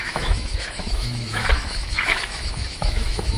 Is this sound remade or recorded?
remade